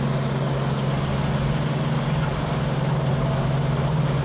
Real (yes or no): yes